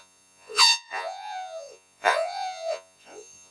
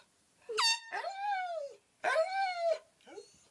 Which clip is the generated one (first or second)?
first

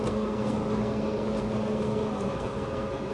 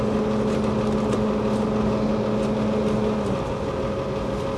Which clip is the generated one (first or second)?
first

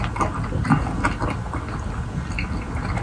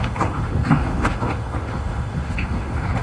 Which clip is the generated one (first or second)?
second